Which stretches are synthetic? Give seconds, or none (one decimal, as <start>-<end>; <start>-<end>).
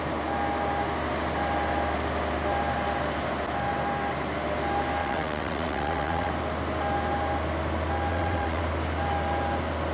5.0-6.3; 8.1-8.6